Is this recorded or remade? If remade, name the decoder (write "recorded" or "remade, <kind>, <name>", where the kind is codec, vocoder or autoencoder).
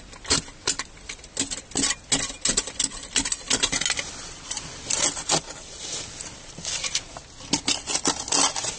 recorded